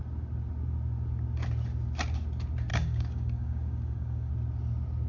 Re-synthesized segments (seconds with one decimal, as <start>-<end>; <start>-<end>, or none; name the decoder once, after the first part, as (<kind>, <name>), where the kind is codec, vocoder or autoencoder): 2.7-4.3 (codec, DAC)